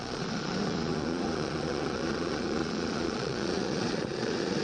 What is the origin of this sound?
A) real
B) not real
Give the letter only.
B